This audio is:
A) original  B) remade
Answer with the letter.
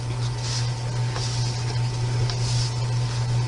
A